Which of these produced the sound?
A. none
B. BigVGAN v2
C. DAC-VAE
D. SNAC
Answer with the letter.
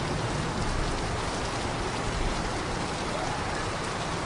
A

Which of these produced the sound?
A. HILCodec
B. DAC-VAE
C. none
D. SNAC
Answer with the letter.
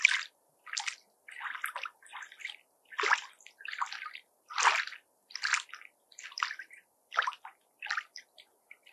C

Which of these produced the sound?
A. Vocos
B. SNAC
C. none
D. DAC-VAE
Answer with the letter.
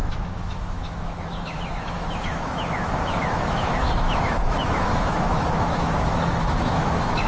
D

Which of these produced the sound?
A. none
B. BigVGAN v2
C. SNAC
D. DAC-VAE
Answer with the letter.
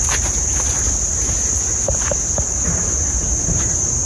B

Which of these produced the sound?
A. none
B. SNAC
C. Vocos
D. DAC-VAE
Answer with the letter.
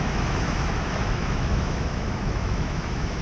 D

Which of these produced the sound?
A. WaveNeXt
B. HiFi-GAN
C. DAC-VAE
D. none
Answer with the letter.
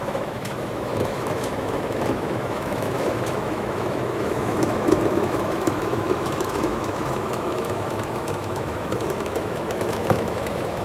C